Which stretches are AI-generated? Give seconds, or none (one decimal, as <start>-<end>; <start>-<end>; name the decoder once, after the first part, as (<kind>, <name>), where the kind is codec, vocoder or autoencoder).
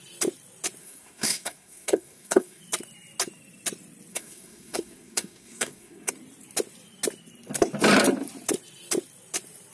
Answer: 0.8-2.6 (codec, SNAC); 4.1-6.1